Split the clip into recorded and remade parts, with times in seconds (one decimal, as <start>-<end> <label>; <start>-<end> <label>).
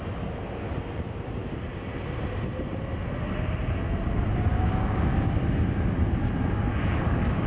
0.0-4.5 recorded; 4.5-5.3 remade; 5.3-6.7 recorded; 6.7-7.5 remade